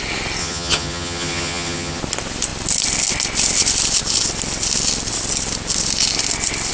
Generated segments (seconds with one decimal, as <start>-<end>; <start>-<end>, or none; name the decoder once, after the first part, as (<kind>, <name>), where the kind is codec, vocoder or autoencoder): 0.4-2.0 (vocoder, HiFi-GAN)